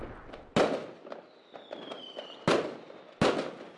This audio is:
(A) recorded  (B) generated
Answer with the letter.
A